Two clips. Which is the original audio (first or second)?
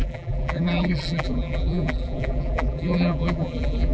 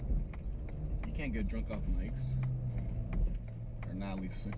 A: second